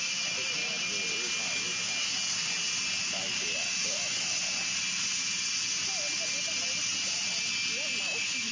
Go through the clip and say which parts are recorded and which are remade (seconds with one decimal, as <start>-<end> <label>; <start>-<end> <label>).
0.0-0.6 remade; 0.6-1.4 recorded; 1.4-2.1 remade; 2.1-3.9 recorded; 3.9-4.4 remade; 4.4-8.0 recorded; 8.0-8.5 remade